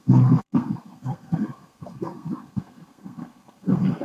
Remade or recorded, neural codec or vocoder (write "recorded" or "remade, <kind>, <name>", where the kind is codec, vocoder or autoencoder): remade, codec, SNAC